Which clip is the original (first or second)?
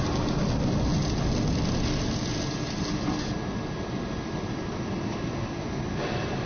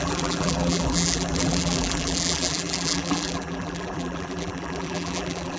first